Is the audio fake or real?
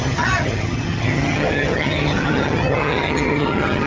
fake